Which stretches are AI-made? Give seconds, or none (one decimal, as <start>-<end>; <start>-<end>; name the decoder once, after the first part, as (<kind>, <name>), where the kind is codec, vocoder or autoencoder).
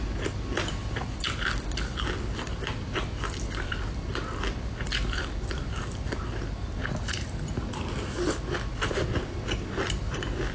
none